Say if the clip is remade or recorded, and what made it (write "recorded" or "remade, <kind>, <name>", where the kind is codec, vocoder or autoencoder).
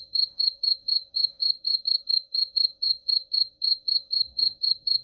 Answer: remade, autoencoder, DAC-VAE